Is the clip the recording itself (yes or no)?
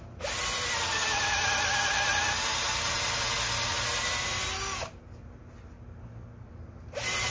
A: yes